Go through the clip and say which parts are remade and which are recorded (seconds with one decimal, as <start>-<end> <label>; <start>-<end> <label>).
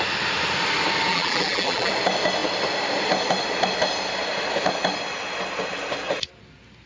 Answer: 0.0-1.1 recorded; 1.1-1.9 remade; 1.9-6.9 recorded